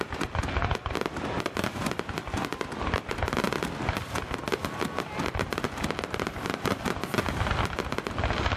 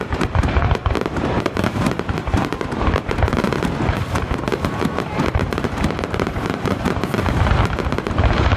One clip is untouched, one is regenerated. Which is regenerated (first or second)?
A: second